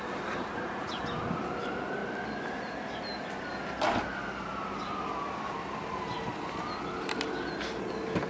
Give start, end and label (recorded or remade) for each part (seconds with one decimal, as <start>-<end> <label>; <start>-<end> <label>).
0.0-0.4 recorded; 0.4-1.0 remade; 1.0-8.3 recorded